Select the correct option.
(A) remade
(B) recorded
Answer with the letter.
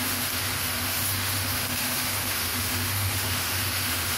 A